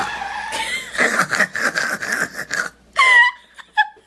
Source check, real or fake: real